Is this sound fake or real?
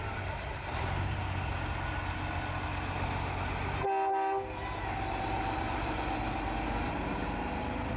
real